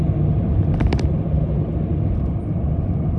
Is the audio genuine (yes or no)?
yes